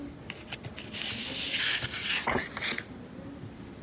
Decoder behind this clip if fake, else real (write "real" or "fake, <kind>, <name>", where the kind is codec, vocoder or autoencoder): real